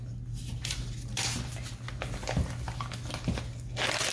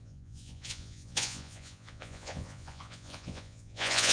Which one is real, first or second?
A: first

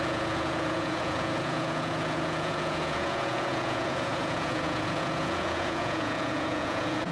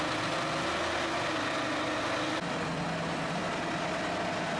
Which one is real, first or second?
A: second